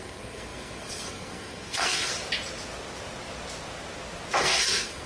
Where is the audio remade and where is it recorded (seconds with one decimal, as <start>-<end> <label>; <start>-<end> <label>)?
0.0-2.1 remade; 2.1-4.4 recorded; 4.4-5.1 remade